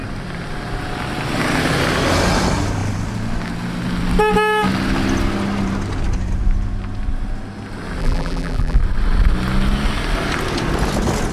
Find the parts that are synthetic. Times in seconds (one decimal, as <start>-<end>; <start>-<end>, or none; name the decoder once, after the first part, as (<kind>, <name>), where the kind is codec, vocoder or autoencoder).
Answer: 8.0-8.8 (vocoder, BigVGAN v2)